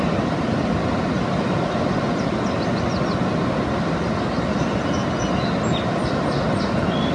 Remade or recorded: recorded